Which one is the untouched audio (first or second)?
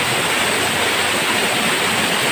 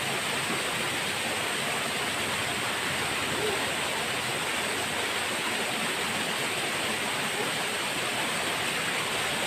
second